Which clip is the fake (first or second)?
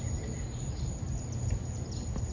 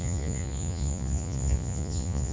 second